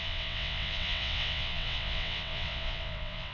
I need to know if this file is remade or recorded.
remade